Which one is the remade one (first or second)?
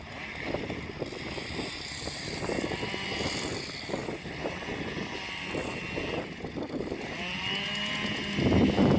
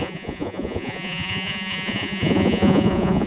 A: second